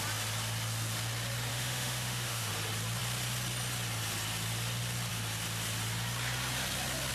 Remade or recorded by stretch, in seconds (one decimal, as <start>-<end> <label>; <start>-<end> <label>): 0.0-1.5 recorded; 1.5-2.5 remade; 2.5-7.1 recorded